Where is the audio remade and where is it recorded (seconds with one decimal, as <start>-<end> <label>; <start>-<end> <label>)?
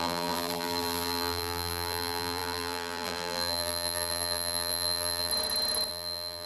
0.0-5.3 remade; 5.3-5.9 recorded; 5.9-6.5 remade